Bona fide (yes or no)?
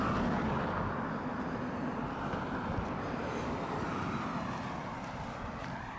yes